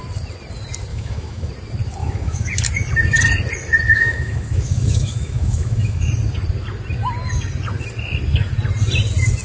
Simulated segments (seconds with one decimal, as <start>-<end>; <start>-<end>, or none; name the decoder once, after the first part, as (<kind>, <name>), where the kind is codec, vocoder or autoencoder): 0.9-1.5 (autoencoder, DAC-VAE); 2.0-2.5; 3.9-6.1